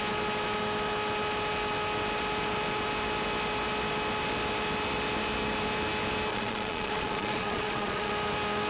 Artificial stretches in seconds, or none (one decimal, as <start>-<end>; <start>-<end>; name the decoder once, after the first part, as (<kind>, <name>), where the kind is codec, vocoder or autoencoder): 6.3-8.1 (vocoder, Vocos)